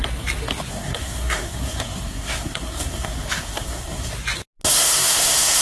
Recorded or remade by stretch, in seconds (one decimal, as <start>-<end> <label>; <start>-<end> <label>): 0.0-0.7 recorded; 0.7-4.1 remade; 4.1-4.6 recorded; 4.6-5.6 remade